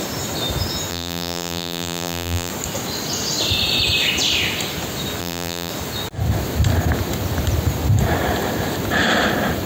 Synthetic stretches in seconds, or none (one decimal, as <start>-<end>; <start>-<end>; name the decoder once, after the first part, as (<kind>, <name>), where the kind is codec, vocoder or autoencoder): 0.9-2.5 (vocoder, BigVGAN v2); 5.2-5.7